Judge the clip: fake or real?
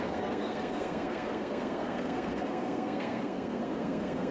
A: fake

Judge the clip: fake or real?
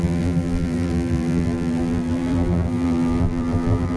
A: fake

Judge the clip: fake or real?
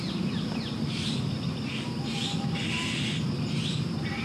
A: real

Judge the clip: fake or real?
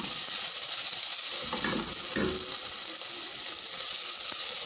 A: real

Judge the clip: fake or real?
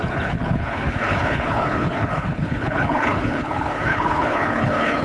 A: fake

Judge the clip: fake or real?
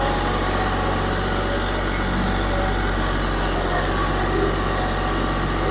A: real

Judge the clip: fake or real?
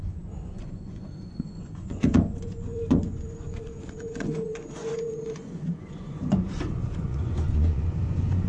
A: fake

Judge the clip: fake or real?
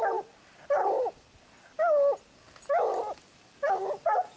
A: real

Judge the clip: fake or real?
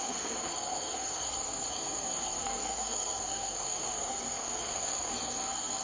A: fake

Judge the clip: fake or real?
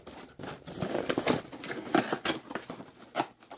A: real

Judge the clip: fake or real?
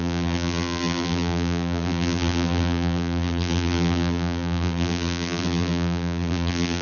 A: fake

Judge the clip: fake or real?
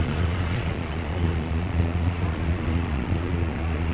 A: fake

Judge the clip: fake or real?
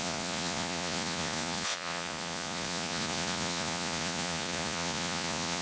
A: fake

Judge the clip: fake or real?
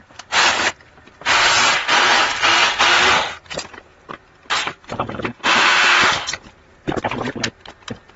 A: fake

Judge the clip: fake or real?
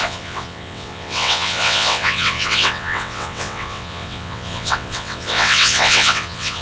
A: fake